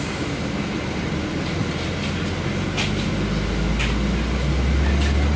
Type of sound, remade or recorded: recorded